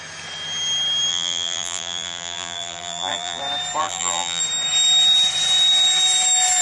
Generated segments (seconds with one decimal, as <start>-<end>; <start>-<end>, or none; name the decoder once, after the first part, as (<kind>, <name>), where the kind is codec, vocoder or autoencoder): 1.1-3.4 (vocoder, BigVGAN v2); 3.8-4.4